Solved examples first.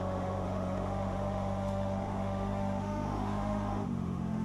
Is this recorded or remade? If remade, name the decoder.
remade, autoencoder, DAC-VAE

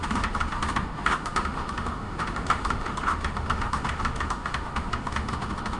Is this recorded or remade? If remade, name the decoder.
remade, autoencoder, DAC-VAE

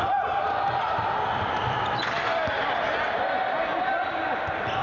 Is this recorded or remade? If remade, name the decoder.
recorded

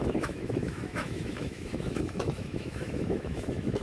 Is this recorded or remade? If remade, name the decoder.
remade, autoencoder, DAC-VAE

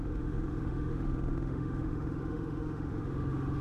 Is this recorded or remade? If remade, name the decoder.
remade, autoencoder, DAC-VAE